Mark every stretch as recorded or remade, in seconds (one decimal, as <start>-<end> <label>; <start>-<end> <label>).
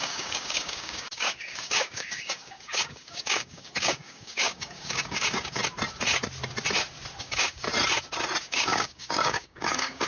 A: 0.0-5.6 remade; 5.6-7.2 recorded; 7.2-7.7 remade; 7.7-8.4 recorded; 8.4-10.1 remade